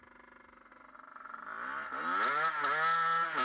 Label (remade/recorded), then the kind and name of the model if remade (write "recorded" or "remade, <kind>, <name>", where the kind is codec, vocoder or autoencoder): recorded